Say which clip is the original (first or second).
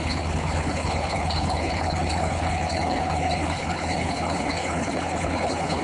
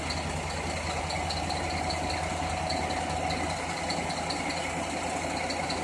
second